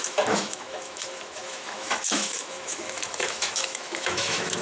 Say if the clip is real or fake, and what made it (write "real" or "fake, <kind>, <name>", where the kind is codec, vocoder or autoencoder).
fake, autoencoder, DAC-VAE